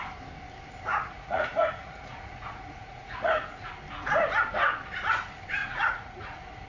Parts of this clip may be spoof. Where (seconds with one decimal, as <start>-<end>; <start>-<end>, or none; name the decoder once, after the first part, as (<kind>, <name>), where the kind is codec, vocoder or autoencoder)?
0.9-3.7 (vocoder, Vocos); 5.6-6.2

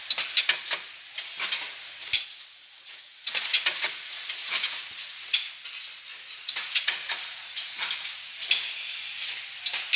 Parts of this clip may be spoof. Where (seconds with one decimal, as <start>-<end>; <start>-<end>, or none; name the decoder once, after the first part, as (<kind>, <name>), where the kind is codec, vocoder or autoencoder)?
2.3-5.5 (vocoder, Vocos); 6.1-8.3

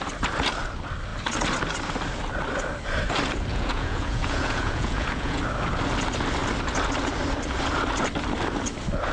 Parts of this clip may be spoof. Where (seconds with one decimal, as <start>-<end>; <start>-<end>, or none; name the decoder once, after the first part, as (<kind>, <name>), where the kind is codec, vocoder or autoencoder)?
3.5-5.4 (vocoder, Vocos)

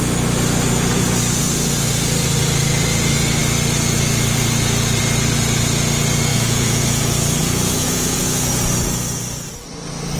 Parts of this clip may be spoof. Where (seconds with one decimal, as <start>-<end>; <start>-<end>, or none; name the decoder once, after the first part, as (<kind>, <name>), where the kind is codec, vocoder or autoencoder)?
6.3-7.0 (vocoder, Vocos); 7.4-8.5

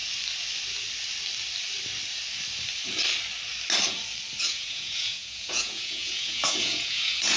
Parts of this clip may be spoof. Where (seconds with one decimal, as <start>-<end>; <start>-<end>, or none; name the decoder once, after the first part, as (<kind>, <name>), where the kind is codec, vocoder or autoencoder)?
4.4-7.4 (vocoder, Vocos)

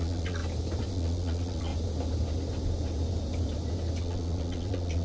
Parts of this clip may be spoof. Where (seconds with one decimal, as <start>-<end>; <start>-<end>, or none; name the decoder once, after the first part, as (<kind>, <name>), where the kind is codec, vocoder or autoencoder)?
0.0-0.4 (vocoder, Vocos); 0.9-1.7; 4.0-5.0

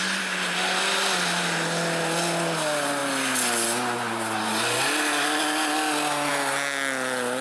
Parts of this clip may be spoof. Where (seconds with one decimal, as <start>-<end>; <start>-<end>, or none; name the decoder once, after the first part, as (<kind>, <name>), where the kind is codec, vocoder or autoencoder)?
none

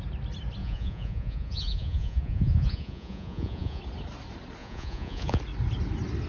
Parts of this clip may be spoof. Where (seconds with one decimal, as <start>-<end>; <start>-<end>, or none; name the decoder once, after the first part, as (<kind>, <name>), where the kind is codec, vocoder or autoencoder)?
0.6-3.8 (vocoder, Vocos); 4.6-5.4